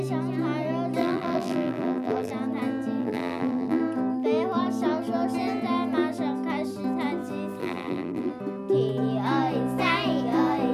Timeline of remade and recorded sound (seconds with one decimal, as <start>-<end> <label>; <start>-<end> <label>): 0.0-1.0 recorded; 1.0-2.3 remade; 2.3-3.0 recorded; 3.0-3.8 remade; 3.8-7.6 recorded; 7.6-8.3 remade; 8.3-10.7 recorded